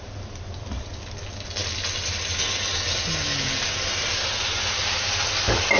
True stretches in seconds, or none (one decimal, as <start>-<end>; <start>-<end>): 0.0-5.8